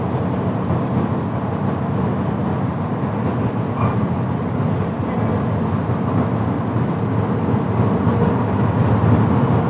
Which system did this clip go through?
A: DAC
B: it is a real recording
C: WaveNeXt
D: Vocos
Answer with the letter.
B